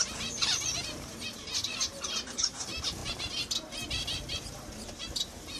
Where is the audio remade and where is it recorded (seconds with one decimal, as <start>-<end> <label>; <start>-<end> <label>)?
0.0-3.0 remade; 3.0-4.4 recorded; 4.4-5.6 remade